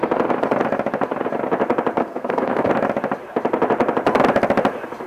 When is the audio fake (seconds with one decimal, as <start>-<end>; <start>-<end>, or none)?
2.0-2.7